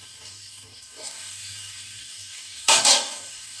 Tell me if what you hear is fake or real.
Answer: fake